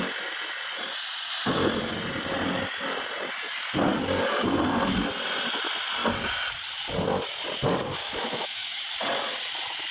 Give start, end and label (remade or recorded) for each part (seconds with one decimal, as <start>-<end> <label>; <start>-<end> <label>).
0.0-8.0 recorded; 8.0-8.8 remade; 8.8-9.9 recorded